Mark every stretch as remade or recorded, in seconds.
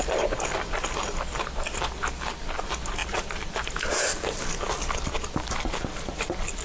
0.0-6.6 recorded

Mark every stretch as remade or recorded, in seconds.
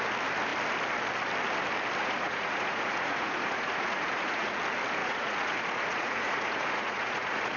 0.0-2.0 recorded; 2.0-4.6 remade; 4.6-5.0 recorded; 5.0-7.6 remade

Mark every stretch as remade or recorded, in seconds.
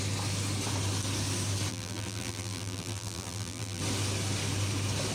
0.0-1.7 recorded; 1.7-3.8 remade; 3.8-5.1 recorded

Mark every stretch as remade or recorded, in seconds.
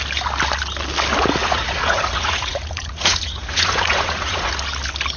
0.0-1.4 recorded; 1.4-4.5 remade; 4.5-5.2 recorded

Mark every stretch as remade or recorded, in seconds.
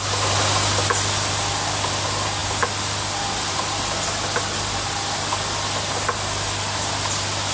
0.0-7.5 recorded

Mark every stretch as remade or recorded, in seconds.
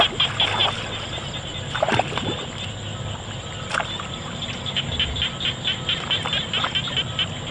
0.0-7.5 recorded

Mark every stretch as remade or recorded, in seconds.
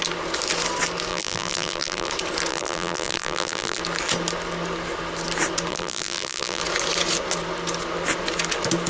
0.0-1.1 recorded; 1.1-2.1 remade; 2.1-2.5 recorded; 2.5-3.8 remade; 3.8-5.7 recorded; 5.7-6.6 remade; 6.6-8.9 recorded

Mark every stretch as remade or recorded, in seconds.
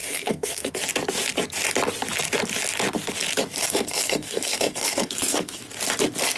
0.0-0.7 remade; 0.7-3.6 recorded; 3.6-5.6 remade; 5.6-6.4 recorded